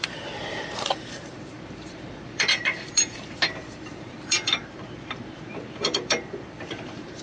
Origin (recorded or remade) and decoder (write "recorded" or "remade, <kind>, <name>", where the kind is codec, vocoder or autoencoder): remade, vocoder, BigVGAN v2